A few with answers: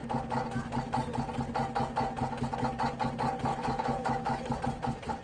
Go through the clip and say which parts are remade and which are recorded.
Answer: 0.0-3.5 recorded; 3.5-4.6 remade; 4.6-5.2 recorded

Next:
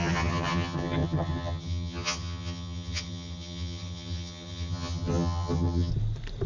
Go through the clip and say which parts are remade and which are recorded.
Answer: 0.0-5.9 remade; 5.9-6.5 recorded

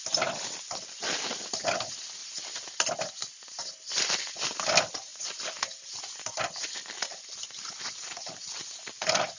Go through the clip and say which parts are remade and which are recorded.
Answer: 0.0-9.4 recorded

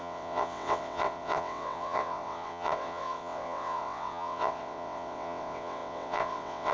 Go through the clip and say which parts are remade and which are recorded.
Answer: 0.0-6.7 remade

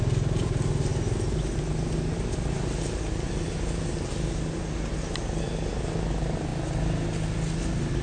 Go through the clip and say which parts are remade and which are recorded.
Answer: 0.0-8.0 recorded

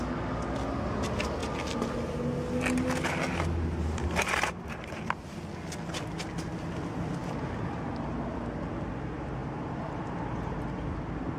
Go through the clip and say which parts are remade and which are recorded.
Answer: 0.0-9.4 recorded; 9.4-11.0 remade; 11.0-11.4 recorded